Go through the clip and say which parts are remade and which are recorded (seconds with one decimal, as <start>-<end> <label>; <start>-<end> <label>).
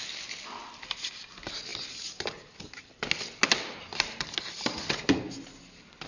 0.0-6.1 recorded